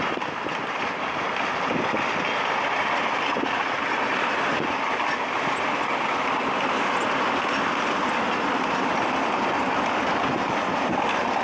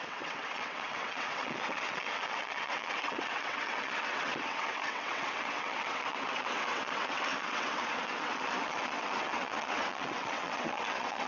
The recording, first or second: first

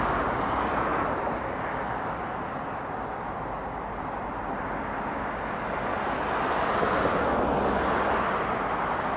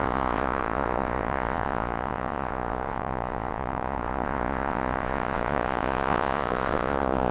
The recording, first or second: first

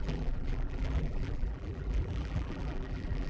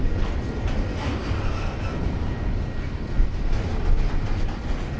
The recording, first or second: second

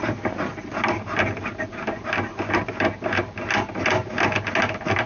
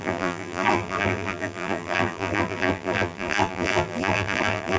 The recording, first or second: first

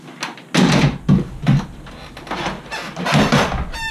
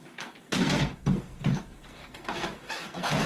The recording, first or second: first